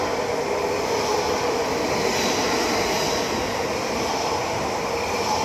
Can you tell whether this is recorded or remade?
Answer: recorded